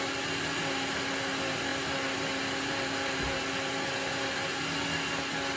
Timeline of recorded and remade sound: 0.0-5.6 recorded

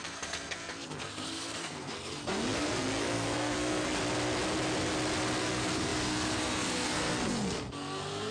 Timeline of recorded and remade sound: 0.0-4.0 remade; 4.0-5.4 recorded; 5.4-8.3 remade

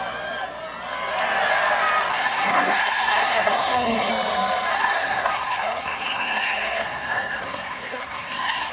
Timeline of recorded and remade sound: 0.0-2.1 recorded; 2.1-4.1 remade; 4.1-4.7 recorded; 4.7-8.7 remade

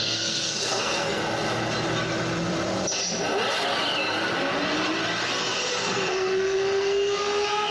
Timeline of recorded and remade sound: 0.0-1.2 remade; 1.2-5.8 recorded; 5.8-7.7 remade

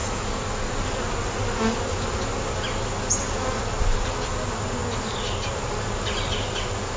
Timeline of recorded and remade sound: 0.0-7.0 recorded